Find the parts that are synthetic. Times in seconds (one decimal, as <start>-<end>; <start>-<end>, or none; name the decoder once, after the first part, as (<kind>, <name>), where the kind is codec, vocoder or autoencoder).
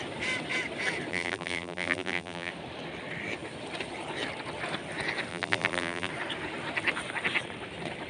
1.1-2.5 (vocoder, BigVGAN v2); 5.3-6.1